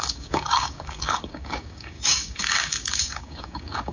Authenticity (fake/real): fake